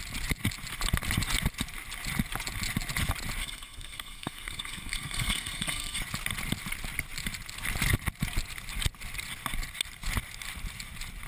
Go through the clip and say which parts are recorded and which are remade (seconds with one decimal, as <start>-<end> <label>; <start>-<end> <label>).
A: 0.0-3.4 recorded; 3.4-6.0 remade; 6.0-11.3 recorded